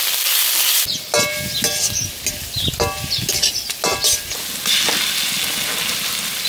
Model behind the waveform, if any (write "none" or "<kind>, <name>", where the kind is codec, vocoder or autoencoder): none